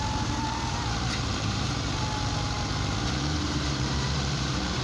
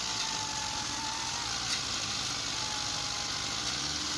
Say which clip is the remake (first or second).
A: first